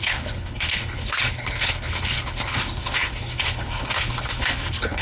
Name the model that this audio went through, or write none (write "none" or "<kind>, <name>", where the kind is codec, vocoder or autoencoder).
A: codec, HILCodec